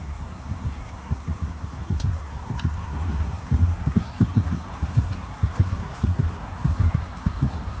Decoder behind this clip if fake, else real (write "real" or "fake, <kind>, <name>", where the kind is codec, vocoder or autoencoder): fake, codec, SNAC